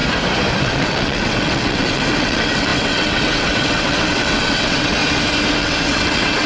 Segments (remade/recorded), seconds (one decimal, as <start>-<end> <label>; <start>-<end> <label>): 0.0-0.6 recorded; 0.6-5.0 remade; 5.0-5.6 recorded; 5.6-6.5 remade

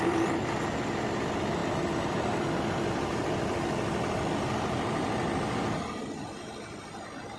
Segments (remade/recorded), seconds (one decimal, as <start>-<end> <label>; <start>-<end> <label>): 0.0-7.4 recorded

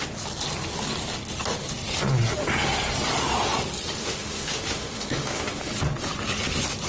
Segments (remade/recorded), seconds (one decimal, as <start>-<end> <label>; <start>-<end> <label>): 0.0-4.0 recorded; 4.0-5.7 remade; 5.7-6.9 recorded

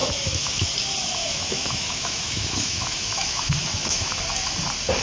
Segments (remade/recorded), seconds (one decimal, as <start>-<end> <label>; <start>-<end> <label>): 0.0-0.7 remade; 0.7-1.2 recorded; 1.2-4.2 remade; 4.2-5.0 recorded

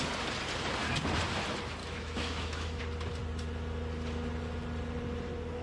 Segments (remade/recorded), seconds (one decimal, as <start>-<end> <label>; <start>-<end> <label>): 0.0-1.8 recorded; 1.8-2.8 remade; 2.8-5.6 recorded

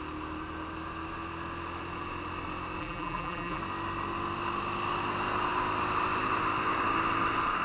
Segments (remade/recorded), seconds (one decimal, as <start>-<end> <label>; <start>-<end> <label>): 0.0-2.8 recorded; 2.8-3.6 remade; 3.6-7.6 recorded